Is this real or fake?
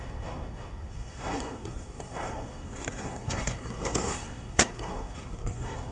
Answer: fake